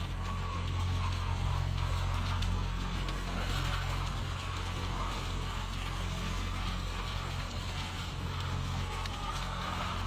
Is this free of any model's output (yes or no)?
no